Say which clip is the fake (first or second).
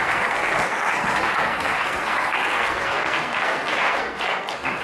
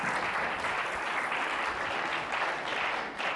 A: first